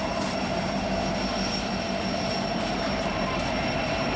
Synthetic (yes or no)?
yes